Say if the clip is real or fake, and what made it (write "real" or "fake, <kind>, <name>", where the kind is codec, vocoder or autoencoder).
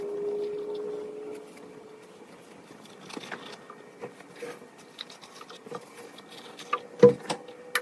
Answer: real